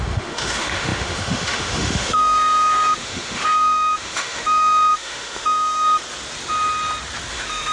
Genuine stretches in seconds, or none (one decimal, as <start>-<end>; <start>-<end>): 6.0-7.3